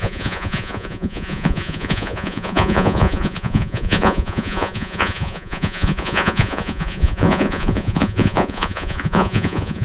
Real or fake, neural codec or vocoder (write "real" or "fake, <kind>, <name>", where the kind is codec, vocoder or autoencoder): fake, vocoder, Vocos